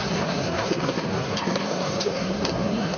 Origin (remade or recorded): remade